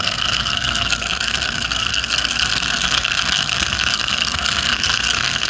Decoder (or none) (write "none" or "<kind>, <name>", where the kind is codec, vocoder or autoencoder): codec, SNAC